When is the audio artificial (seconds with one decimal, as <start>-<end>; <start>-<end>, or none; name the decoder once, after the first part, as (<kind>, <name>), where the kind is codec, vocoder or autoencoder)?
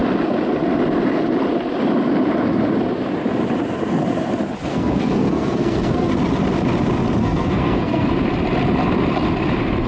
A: 4.7-6.1 (codec, SNAC); 7.2-8.1